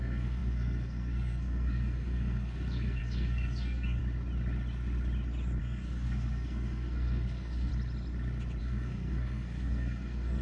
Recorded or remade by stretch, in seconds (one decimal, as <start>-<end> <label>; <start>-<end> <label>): 0.0-4.0 remade; 4.0-5.6 recorded; 5.6-7.7 remade; 7.7-8.6 recorded; 8.6-10.4 remade